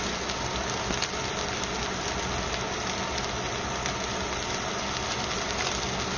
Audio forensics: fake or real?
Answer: real